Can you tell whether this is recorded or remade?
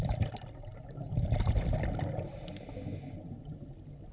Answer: recorded